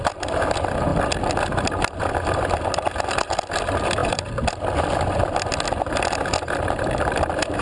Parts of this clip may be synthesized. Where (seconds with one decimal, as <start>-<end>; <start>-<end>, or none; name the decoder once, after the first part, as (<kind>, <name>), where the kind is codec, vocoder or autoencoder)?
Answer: none